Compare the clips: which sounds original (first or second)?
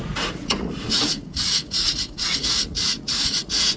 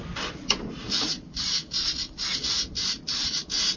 second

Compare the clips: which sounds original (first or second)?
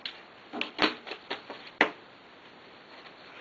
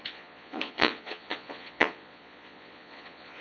first